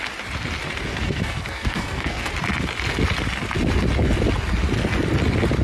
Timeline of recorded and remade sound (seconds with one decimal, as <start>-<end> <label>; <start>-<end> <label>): 0.0-0.9 recorded; 0.9-2.3 remade; 2.3-5.6 recorded